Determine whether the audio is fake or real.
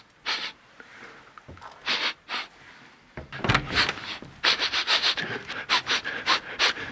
real